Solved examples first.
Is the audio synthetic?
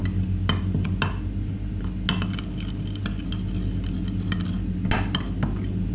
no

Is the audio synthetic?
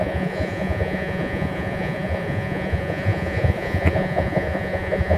yes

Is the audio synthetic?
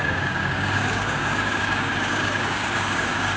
yes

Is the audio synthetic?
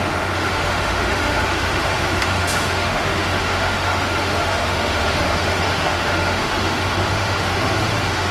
yes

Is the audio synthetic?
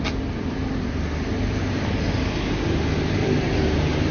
no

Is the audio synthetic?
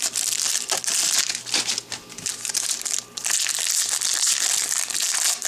no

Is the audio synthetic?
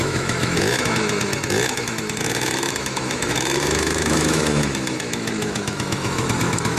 yes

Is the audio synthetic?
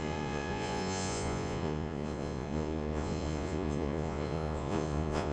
yes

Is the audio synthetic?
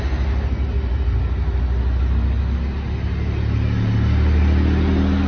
no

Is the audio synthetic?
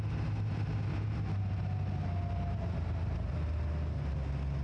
no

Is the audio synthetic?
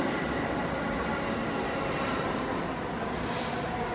no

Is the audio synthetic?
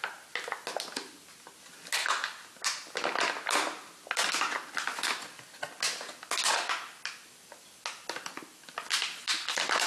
no